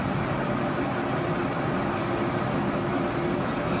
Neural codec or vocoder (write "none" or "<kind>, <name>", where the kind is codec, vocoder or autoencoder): none